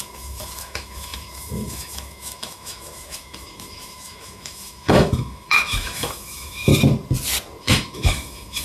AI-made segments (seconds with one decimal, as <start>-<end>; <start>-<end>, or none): 0.0-6.7; 7.6-8.6

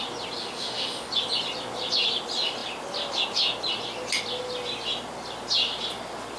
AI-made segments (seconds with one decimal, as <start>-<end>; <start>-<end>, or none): 0.4-1.1

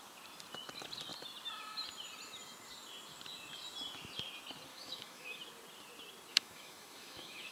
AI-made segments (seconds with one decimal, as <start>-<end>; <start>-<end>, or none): 4.7-5.4; 6.3-7.5

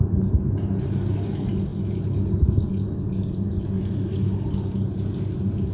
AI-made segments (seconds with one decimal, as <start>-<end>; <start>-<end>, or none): none